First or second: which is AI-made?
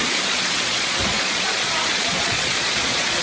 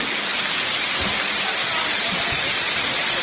first